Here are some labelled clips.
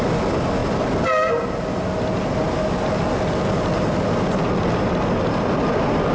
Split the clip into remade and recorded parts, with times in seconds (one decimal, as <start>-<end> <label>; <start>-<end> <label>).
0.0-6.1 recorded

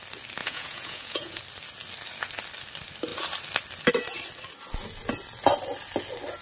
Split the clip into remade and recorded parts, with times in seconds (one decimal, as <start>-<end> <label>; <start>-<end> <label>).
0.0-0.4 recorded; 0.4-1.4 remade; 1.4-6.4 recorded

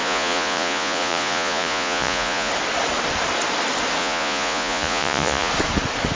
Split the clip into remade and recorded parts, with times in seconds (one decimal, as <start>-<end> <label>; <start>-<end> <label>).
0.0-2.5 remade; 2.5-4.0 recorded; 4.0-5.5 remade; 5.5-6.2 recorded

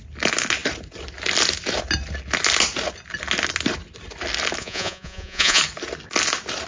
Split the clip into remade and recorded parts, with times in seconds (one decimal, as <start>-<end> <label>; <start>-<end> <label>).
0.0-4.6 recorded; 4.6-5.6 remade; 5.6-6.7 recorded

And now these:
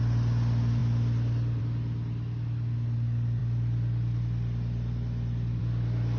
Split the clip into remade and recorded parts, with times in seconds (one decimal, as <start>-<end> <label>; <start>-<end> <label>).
0.0-6.2 recorded